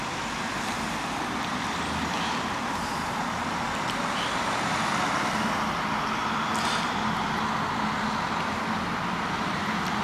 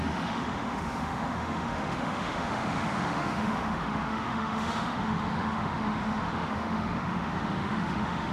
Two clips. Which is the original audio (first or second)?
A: first